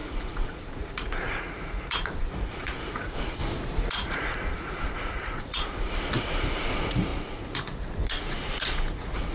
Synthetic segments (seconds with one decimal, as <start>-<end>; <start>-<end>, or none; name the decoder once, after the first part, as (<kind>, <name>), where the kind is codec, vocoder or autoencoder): 0.0-9.3 (vocoder, Vocos)